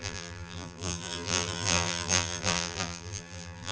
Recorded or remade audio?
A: remade